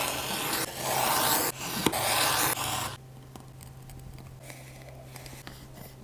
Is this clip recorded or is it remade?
recorded